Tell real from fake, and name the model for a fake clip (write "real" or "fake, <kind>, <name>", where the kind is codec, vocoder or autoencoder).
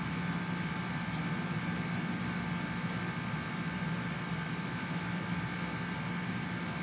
real